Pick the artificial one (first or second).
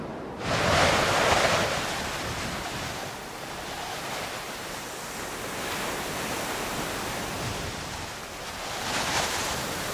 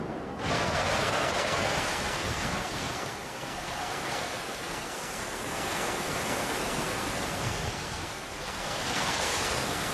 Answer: second